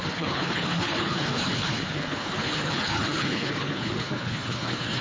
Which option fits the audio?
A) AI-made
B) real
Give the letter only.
A